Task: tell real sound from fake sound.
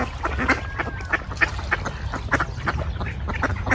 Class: real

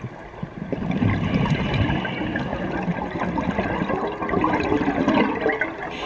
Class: real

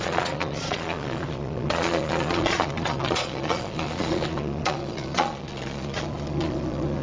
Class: fake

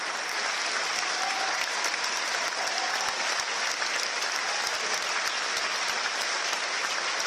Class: real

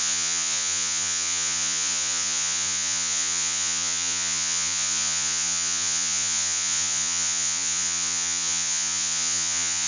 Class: fake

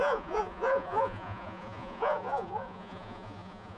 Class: fake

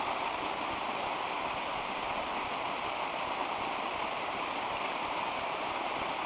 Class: real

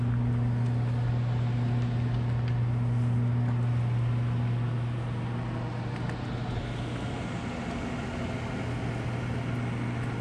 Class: real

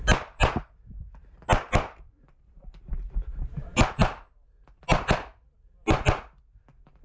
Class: real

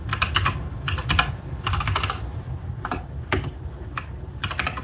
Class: real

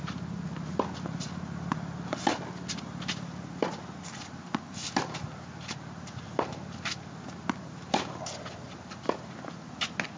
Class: real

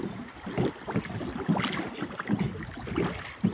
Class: real